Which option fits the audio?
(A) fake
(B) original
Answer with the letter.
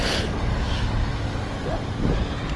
B